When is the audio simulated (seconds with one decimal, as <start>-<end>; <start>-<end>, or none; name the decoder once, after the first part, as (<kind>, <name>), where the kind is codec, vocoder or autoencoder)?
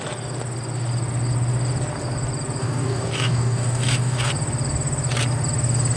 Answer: 2.6-4.3 (codec, DAC)